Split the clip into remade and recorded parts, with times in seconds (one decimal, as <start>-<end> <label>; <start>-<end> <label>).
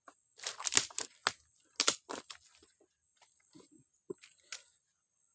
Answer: 0.0-5.3 recorded